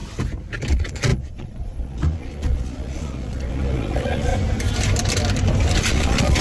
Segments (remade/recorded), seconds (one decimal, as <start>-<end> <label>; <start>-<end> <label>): 0.0-0.7 recorded; 0.7-4.3 remade; 4.3-5.7 recorded; 5.7-6.4 remade